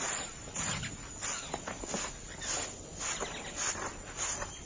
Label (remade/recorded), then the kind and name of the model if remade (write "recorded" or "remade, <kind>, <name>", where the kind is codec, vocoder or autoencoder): recorded